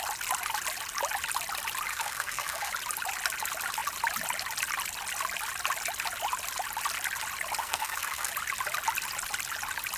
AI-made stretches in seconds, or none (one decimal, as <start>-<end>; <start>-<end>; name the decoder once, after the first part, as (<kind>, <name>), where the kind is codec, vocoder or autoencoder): 1.9-2.7 (codec, SNAC); 7.6-8.3